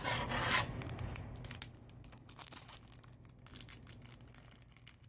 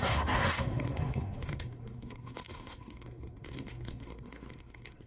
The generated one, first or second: second